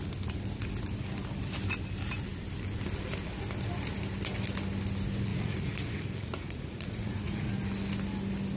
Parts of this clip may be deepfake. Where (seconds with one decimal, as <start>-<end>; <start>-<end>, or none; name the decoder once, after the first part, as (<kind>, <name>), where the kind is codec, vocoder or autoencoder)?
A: 5.3-7.5 (vocoder, Vocos)